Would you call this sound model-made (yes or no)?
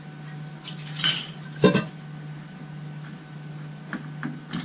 no